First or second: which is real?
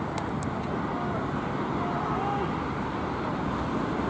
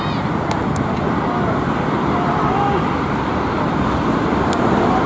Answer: first